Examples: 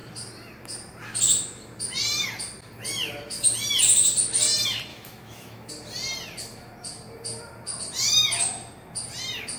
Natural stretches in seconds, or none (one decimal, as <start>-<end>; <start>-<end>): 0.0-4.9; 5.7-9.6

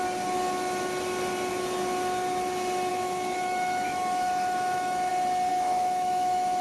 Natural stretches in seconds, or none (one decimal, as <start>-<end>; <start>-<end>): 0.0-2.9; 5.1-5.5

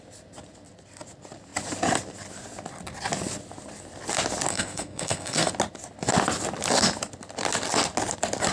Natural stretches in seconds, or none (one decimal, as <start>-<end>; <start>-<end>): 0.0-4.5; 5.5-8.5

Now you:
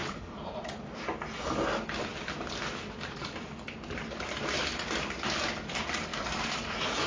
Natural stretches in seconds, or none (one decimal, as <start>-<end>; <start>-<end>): 1.0-6.1